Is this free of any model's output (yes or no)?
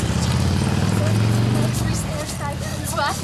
yes